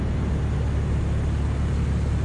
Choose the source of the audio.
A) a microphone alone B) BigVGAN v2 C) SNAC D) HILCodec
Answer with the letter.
A